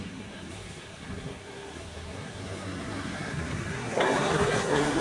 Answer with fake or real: fake